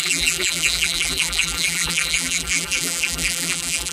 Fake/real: fake